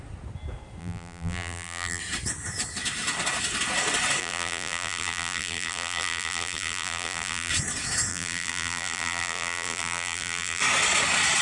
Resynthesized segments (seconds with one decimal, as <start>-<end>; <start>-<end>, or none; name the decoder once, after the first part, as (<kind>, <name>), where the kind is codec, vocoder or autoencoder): 0.8-2.0 (vocoder, BigVGAN v2); 4.2-7.5; 8.1-10.6